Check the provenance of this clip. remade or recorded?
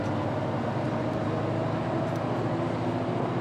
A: recorded